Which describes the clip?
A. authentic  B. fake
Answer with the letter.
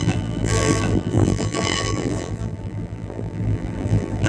B